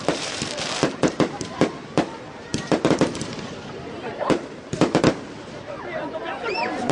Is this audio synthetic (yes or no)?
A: yes